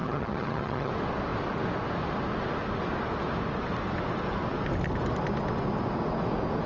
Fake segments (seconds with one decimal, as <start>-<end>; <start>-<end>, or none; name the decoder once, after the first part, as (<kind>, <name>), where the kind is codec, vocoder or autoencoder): 0.0-0.9 (vocoder, HiFi-GAN)